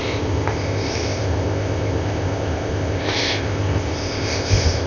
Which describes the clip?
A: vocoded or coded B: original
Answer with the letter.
A